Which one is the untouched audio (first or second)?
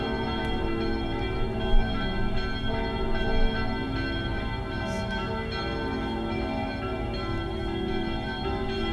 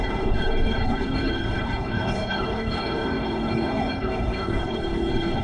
first